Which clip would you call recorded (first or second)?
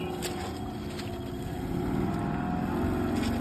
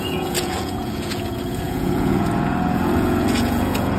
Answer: first